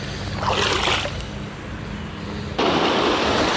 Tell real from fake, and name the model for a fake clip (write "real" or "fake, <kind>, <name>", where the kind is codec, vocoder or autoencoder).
real